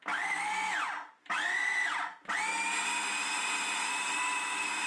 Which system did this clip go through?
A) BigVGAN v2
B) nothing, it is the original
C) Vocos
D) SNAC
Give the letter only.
B